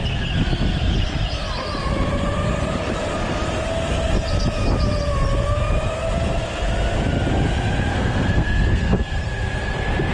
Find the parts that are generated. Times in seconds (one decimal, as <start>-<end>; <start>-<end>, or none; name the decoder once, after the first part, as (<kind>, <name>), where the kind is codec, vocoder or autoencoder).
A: 7.9-9.2 (codec, SNAC)